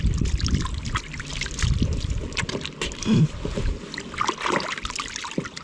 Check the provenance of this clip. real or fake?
real